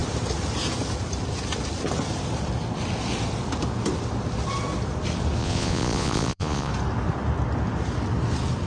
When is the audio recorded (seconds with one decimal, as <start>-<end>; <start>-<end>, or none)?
0.0-5.4; 6.7-8.7